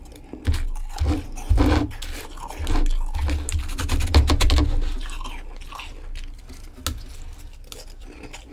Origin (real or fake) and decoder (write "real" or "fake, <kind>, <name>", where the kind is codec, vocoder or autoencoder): real